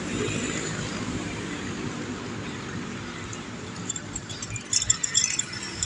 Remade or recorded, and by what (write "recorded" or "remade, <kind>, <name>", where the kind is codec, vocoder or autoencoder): remade, vocoder, BigVGAN v2